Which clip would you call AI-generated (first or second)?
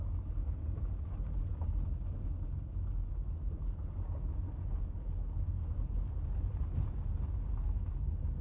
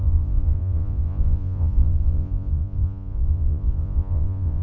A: second